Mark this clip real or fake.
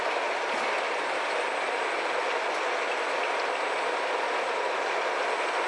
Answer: real